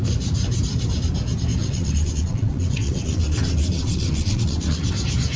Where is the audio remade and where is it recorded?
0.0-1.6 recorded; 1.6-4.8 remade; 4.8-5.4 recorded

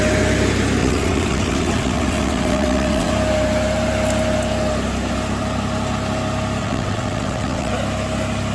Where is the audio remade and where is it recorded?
0.0-0.8 recorded; 0.8-3.1 remade; 3.1-6.6 recorded; 6.6-7.7 remade; 7.7-8.5 recorded

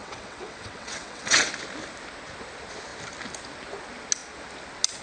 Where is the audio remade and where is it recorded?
0.0-1.5 remade; 1.5-5.0 recorded

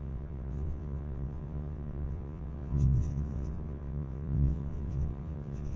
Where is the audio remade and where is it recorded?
0.0-5.8 remade

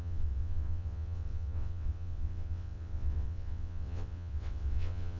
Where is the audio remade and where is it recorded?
0.0-5.2 remade

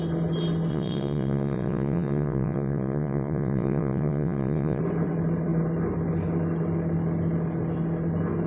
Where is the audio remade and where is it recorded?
0.0-0.7 recorded; 0.7-4.8 remade; 4.8-8.5 recorded